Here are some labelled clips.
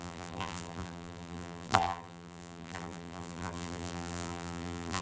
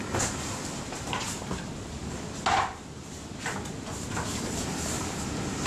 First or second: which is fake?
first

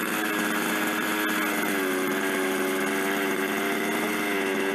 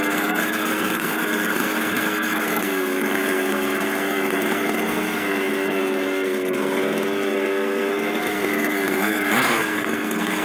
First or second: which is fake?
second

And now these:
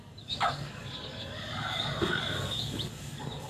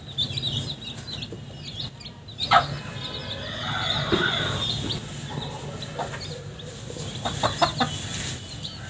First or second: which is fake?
first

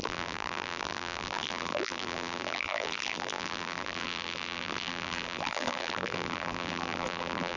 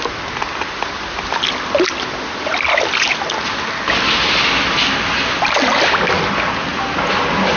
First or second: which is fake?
first